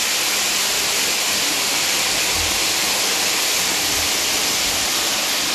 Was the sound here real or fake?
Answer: real